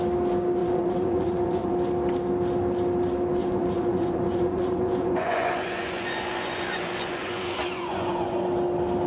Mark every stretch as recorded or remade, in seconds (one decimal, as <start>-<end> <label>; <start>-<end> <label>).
0.0-0.6 recorded; 0.6-1.7 remade; 1.7-3.4 recorded; 3.4-8.5 remade; 8.5-9.1 recorded

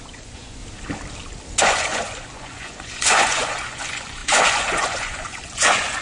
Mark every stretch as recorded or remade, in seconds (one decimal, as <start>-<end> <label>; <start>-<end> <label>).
0.0-0.6 remade; 0.6-1.6 recorded; 1.6-6.0 remade